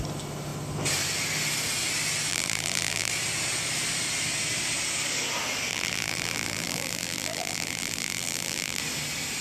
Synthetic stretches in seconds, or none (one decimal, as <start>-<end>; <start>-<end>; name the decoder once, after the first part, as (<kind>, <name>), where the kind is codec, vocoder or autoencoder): 2.3-3.1 (vocoder, BigVGAN v2); 5.7-8.8